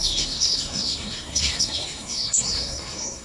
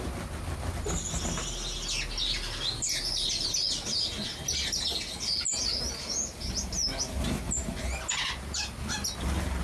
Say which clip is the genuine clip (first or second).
second